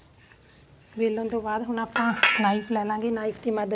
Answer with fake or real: real